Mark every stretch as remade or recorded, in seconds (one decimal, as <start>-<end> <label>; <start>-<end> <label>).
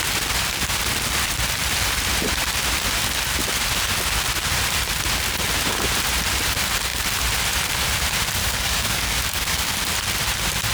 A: 0.0-8.4 recorded; 8.4-9.7 remade; 9.7-10.7 recorded